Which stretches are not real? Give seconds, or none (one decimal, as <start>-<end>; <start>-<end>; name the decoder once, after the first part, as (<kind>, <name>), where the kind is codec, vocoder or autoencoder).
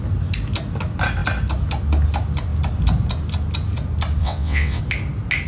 4.2-4.8 (vocoder, WaveNeXt)